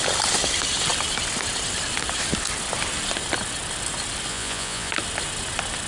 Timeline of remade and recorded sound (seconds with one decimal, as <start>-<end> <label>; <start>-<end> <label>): 0.0-4.3 recorded; 4.3-4.9 remade; 4.9-5.9 recorded